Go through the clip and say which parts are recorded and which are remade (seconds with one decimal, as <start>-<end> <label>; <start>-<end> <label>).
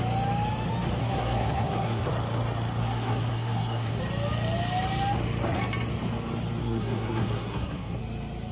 0.0-1.0 recorded; 1.0-2.1 remade; 2.1-2.8 recorded; 2.8-4.0 remade; 4.0-6.6 recorded; 6.6-8.0 remade; 8.0-8.5 recorded